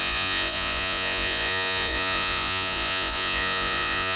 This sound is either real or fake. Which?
fake